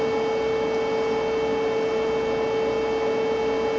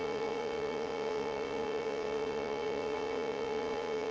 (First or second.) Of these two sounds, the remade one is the second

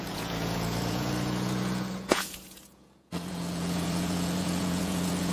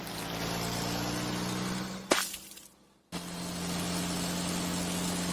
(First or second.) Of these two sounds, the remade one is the first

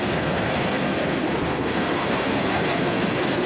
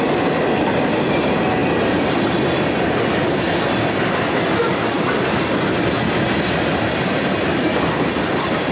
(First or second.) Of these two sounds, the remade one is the first